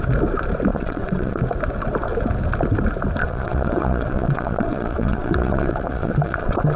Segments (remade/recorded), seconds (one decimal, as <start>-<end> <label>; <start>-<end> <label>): 0.0-0.7 recorded; 0.7-1.4 remade; 1.4-3.2 recorded; 3.2-6.8 remade